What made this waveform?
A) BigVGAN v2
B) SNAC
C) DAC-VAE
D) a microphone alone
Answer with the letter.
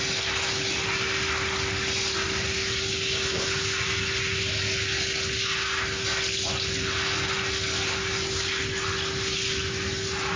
D